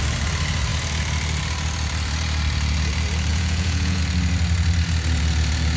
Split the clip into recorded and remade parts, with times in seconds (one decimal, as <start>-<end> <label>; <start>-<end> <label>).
0.0-3.3 recorded; 3.3-4.0 remade; 4.0-5.8 recorded